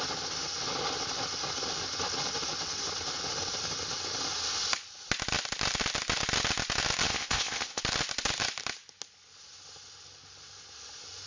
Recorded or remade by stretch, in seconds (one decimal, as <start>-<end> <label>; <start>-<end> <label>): 0.0-7.1 recorded; 7.1-7.8 remade; 7.8-11.3 recorded